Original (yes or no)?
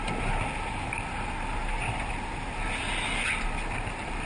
yes